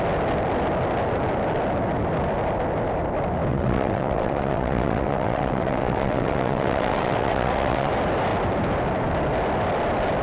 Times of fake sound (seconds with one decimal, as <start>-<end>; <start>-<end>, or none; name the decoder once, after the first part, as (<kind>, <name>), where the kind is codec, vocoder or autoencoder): 3.5-7.9 (vocoder, WaveNeXt)